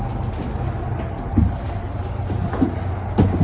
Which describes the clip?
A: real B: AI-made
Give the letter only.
A